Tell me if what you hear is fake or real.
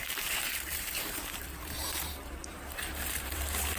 fake